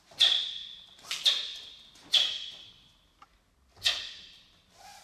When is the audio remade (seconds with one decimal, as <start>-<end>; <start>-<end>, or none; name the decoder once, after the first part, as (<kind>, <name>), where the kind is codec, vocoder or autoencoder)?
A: none

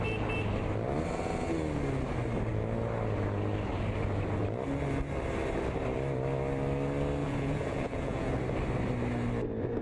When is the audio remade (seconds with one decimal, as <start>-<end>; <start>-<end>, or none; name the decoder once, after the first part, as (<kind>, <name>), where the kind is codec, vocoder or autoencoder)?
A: 7.2-8.3 (vocoder, Vocos)

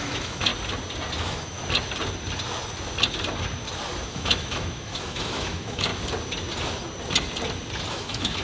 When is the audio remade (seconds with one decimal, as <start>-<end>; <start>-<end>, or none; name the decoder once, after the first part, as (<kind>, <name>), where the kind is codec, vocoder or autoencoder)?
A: 0.0-0.5 (autoencoder, DAC-VAE); 1.2-1.6; 4.1-5.9; 7.9-8.4

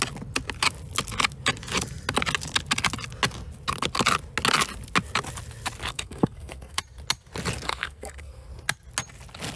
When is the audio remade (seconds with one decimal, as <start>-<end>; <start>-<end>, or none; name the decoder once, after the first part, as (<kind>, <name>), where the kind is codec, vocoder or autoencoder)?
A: 5.9-6.8 (codec, SNAC); 7.7-8.5

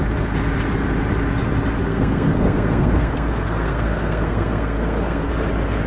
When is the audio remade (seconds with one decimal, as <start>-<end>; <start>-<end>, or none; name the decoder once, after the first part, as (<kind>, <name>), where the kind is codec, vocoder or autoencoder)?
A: 1.8-5.3 (codec, SNAC)

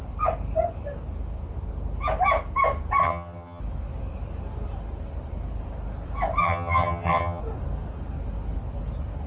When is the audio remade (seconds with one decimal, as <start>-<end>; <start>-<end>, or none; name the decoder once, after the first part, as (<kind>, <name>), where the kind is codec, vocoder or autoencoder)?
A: 3.0-3.6 (vocoder, HiFi-GAN); 6.4-7.4